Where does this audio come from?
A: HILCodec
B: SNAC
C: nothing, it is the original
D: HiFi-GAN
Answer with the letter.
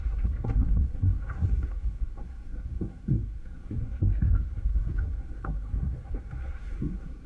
B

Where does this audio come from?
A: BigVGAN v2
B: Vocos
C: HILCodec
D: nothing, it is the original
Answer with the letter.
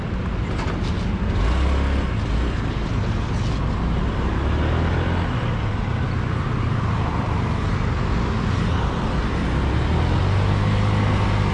D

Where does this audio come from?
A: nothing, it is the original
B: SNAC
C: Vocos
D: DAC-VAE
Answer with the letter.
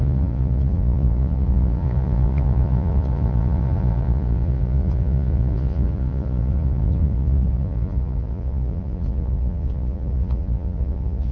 C